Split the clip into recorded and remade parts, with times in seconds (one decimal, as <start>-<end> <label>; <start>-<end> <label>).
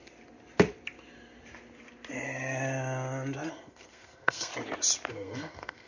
0.0-3.5 recorded; 3.5-4.5 remade; 4.5-5.1 recorded; 5.1-5.9 remade